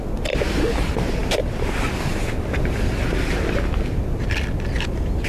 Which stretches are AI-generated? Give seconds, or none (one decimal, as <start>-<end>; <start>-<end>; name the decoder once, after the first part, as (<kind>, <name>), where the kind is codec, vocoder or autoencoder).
none